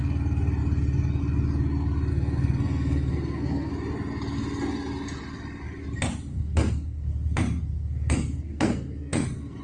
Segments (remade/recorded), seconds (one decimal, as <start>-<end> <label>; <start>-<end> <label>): 0.0-2.1 recorded; 2.1-3.7 remade; 3.7-6.3 recorded; 6.3-9.6 remade